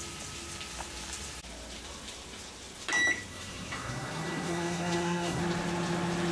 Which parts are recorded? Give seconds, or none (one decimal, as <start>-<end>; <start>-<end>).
0.0-3.3; 5.4-6.3